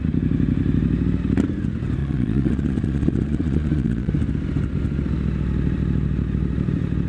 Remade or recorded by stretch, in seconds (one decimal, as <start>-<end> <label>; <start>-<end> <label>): 0.0-2.0 recorded; 2.0-4.1 remade; 4.1-7.1 recorded